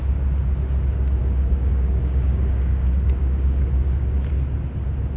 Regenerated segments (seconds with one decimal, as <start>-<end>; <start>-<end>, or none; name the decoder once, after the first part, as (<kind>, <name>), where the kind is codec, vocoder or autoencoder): 1.2-4.3 (codec, DAC)